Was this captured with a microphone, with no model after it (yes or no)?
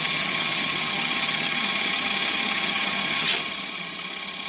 no